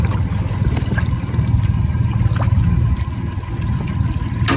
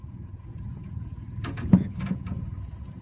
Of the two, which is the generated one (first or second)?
second